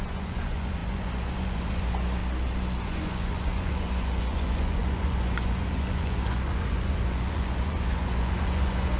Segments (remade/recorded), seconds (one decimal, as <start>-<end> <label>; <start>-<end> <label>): 0.0-2.2 remade; 2.2-2.8 recorded; 2.8-9.0 remade